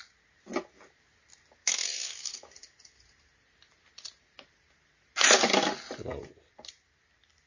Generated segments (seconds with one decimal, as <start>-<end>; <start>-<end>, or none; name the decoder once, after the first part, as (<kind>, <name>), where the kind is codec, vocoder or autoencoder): 1.6-3.0 (codec, DAC)